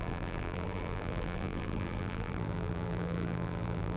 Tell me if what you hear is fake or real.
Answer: fake